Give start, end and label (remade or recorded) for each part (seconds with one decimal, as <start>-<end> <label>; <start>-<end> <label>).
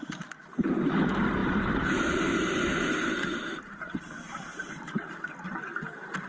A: 0.0-1.4 recorded; 1.4-5.2 remade; 5.2-6.3 recorded